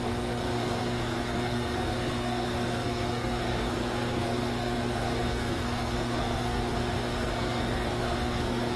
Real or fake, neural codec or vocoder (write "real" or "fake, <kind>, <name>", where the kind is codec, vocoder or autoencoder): fake, codec, SNAC